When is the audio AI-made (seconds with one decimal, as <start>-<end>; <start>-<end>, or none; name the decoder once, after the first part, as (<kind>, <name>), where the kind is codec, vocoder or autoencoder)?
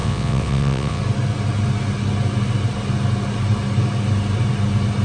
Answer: 0.0-1.0 (vocoder, WaveNeXt)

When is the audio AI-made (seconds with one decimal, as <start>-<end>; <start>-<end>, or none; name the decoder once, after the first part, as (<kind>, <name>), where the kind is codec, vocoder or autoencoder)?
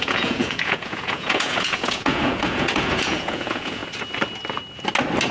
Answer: 0.0-3.8 (vocoder, Vocos)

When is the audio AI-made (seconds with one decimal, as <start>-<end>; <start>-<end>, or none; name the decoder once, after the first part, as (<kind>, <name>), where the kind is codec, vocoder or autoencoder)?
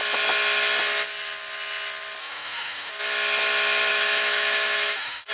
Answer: 2.2-2.9 (autoencoder, DAC-VAE); 3.9-5.3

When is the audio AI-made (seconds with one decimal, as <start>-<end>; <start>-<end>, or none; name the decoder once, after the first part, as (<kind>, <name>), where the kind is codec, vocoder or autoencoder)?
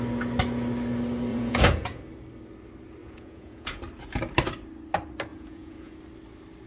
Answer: 1.3-2.0 (vocoder, Vocos); 3.0-3.8; 5.3-6.0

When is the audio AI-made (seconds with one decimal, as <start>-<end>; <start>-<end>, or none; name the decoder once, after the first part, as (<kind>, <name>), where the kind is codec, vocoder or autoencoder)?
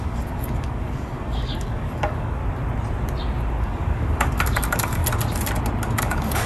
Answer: 0.0-2.4 (codec, DAC); 3.6-5.0; 6.0-6.5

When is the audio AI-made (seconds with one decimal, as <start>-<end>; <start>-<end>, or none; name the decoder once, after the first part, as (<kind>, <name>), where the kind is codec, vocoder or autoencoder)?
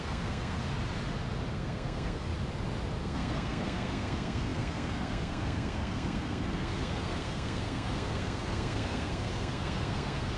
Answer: 0.0-0.6 (codec, SNAC); 1.5-2.3; 3.0-10.4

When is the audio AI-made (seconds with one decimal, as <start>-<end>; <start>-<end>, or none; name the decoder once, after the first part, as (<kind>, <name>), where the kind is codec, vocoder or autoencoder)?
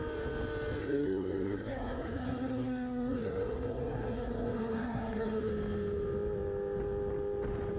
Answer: 0.8-5.5 (codec, SNAC)